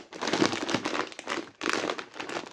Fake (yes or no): no